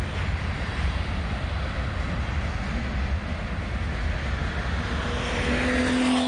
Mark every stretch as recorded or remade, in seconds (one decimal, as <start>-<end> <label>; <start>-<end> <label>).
0.0-6.3 recorded